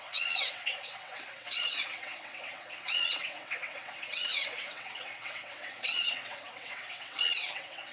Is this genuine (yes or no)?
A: no